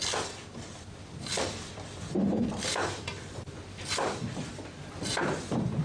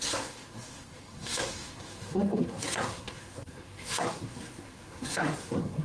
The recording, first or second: first